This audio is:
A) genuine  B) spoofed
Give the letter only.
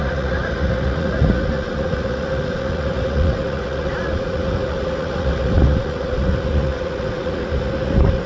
B